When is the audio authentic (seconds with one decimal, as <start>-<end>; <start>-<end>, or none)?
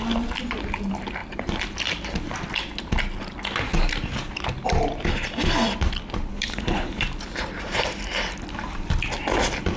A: 0.0-6.3; 7.0-9.8